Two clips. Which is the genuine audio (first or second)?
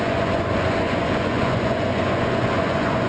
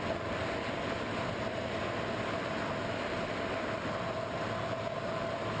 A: second